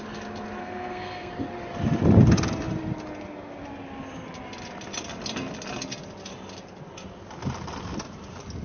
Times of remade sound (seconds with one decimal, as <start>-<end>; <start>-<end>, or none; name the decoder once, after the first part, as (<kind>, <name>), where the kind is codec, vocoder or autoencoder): 0.6-1.3 (codec, SNAC)